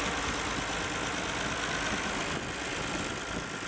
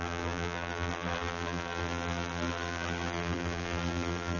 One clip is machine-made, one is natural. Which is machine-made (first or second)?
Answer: second